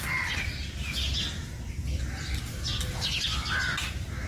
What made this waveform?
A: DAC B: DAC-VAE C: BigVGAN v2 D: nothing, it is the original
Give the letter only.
D